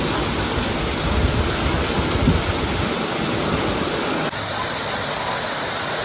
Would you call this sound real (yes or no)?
yes